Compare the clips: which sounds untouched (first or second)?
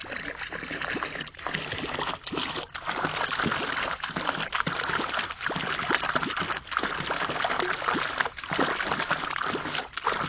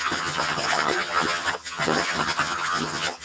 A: first